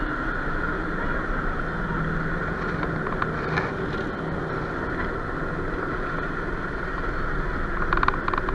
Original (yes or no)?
yes